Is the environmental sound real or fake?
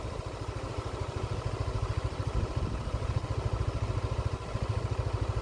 real